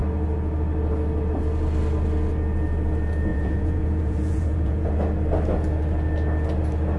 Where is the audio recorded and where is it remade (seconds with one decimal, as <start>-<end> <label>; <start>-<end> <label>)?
0.0-3.3 recorded; 3.3-4.9 remade; 4.9-7.0 recorded